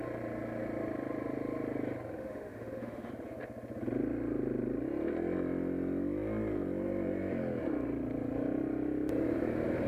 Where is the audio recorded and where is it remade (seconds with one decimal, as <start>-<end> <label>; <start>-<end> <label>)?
0.0-2.2 recorded; 2.2-3.1 remade; 3.1-9.9 recorded